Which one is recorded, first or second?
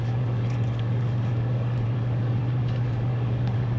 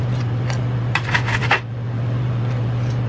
second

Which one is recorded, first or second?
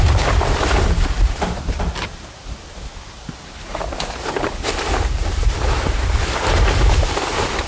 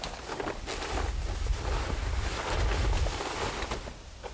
second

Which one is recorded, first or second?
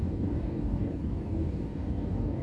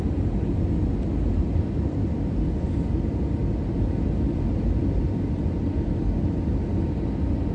second